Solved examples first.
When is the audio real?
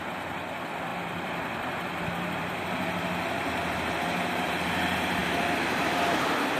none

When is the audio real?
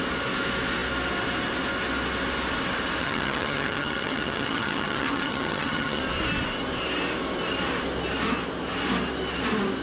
0.0-3.0; 6.0-9.8